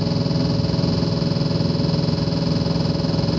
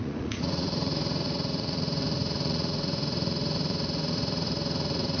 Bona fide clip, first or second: first